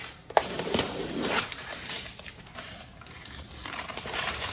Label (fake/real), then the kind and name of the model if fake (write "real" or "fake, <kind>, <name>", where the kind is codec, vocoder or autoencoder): fake, vocoder, BigVGAN v2